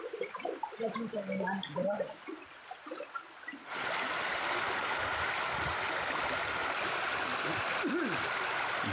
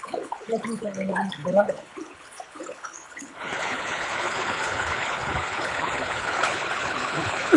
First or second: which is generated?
second